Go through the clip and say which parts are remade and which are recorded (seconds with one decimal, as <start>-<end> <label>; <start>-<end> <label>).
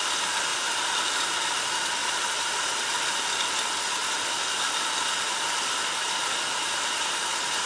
0.0-0.5 recorded; 0.5-1.2 remade; 1.2-2.0 recorded; 2.0-3.1 remade; 3.1-7.7 recorded